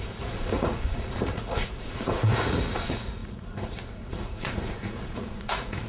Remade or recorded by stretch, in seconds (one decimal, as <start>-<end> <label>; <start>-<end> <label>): 0.0-5.9 remade